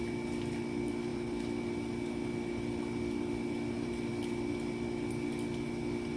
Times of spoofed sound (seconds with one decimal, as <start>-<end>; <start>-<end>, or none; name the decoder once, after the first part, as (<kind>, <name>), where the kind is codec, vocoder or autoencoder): none